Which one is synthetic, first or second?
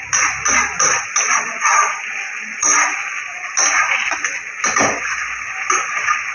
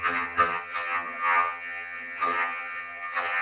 second